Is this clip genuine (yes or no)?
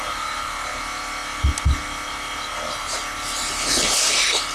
yes